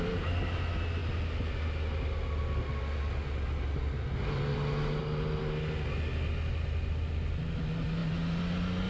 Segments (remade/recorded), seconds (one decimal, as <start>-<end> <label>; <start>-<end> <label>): 0.0-8.9 recorded